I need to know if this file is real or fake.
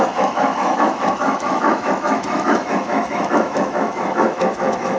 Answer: fake